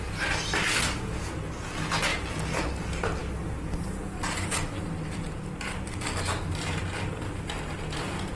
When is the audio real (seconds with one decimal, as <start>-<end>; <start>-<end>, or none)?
0.0-8.4